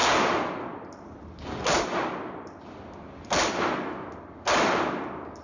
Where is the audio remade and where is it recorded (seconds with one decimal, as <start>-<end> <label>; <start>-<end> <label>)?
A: 0.0-5.4 recorded

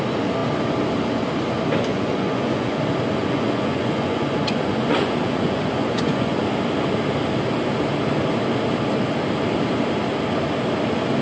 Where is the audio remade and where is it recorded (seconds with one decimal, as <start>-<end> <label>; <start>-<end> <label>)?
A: 0.0-1.9 recorded; 1.9-2.8 remade; 2.8-3.2 recorded; 3.2-6.4 remade; 6.4-11.2 recorded

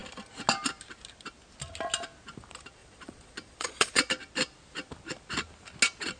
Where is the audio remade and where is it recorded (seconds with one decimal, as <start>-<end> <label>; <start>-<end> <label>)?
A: 0.0-2.8 recorded; 2.8-4.1 remade; 4.1-6.2 recorded

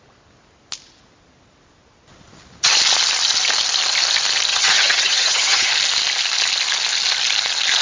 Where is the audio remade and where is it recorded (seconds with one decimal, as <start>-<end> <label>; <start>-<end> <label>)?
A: 0.0-4.5 recorded; 4.5-5.7 remade; 5.7-7.8 recorded